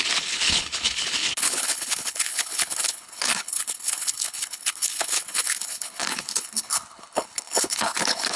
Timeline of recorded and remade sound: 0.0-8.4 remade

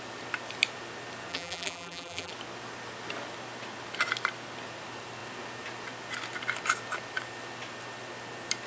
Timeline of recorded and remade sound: 0.0-1.3 recorded; 1.3-2.3 remade; 2.3-8.7 recorded

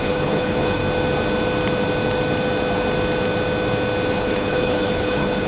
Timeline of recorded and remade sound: 0.0-0.8 remade; 0.8-4.1 recorded; 4.1-5.5 remade